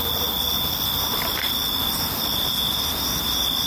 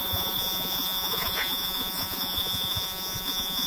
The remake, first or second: second